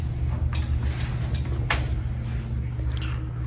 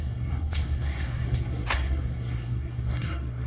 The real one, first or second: first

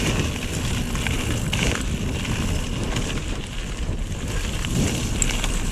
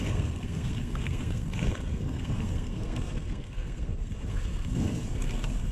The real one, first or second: first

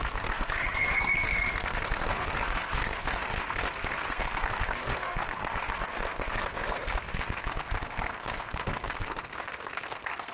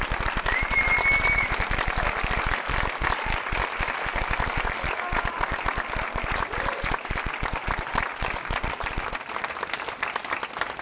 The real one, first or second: second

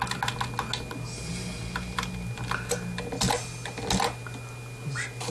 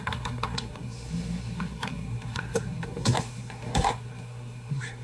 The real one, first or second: first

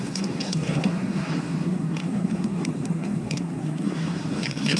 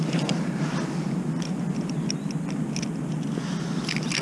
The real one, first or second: second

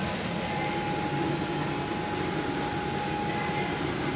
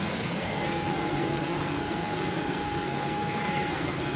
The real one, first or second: first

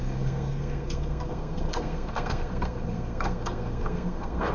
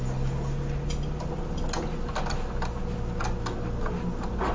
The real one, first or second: second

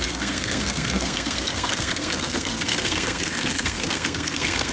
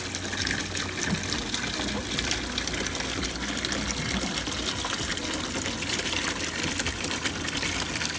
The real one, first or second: second